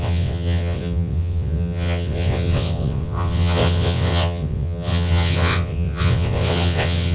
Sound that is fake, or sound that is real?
fake